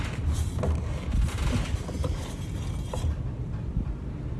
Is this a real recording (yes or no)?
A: yes